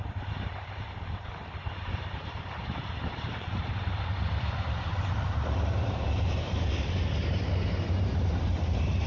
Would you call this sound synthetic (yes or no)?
yes